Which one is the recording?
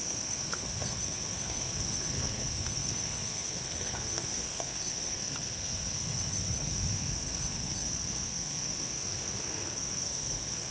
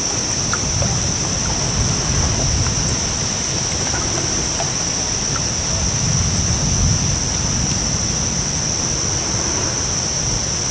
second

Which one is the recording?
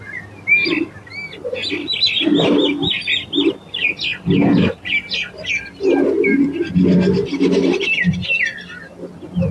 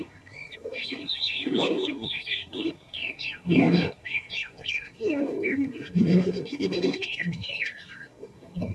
first